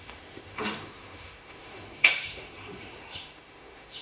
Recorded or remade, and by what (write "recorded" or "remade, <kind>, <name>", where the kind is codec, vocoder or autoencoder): remade, autoencoder, DAC-VAE